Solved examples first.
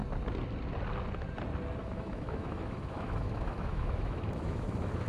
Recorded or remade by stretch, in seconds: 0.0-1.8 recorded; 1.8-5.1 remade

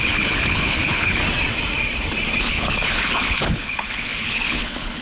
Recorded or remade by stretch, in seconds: 0.0-1.2 remade; 1.2-2.4 recorded; 2.4-5.0 remade

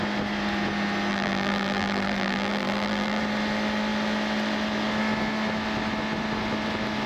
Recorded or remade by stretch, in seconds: 0.0-1.1 recorded; 1.1-3.2 remade; 3.2-7.1 recorded